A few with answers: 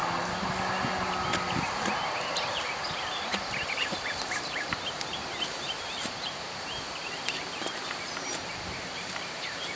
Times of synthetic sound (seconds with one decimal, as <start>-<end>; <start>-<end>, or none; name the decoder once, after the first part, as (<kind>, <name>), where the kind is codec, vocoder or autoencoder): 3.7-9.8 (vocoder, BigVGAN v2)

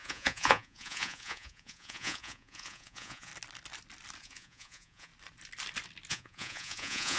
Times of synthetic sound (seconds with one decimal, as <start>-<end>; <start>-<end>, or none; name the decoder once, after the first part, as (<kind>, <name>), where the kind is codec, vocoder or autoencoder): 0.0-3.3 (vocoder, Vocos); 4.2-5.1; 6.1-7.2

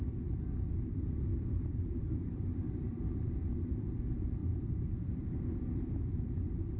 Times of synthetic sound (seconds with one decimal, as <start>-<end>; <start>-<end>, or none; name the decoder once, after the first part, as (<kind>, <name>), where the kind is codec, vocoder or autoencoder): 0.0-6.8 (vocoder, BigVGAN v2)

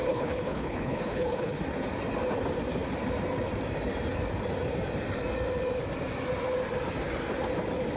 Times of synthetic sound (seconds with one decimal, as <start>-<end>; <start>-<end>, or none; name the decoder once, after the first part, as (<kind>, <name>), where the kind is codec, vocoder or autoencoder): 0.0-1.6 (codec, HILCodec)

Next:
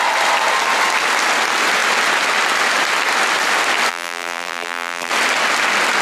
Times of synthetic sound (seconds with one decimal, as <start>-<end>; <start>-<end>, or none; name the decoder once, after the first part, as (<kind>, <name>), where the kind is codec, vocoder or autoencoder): 3.9-5.1 (vocoder, BigVGAN v2)

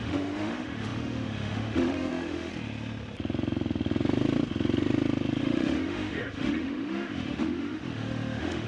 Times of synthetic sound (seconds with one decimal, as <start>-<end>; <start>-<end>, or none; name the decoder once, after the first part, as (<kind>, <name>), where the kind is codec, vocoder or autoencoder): 0.0-2.5 (autoencoder, DAC-VAE); 5.4-8.7